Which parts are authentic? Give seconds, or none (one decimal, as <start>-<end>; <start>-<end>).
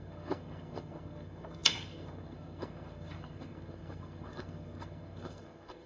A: none